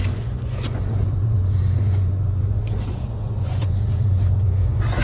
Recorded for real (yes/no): no